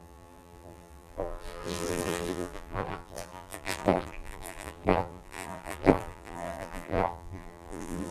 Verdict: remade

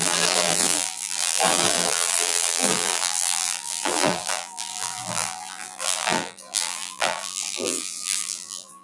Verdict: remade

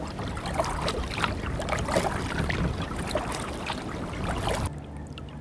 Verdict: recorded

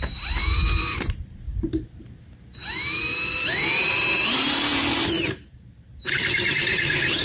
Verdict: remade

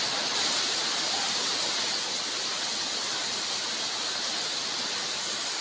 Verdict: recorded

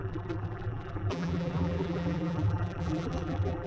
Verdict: remade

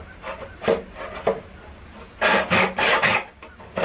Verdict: recorded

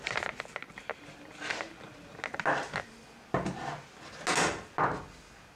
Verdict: recorded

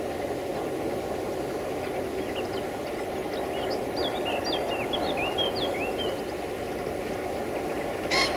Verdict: recorded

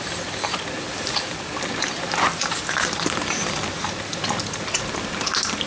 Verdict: recorded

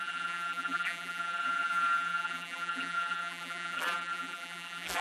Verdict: remade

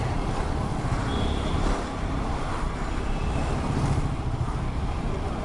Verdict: remade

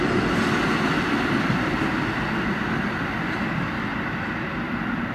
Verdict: recorded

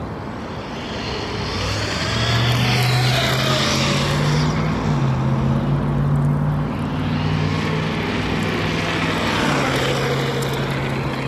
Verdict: recorded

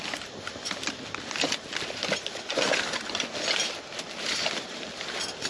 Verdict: recorded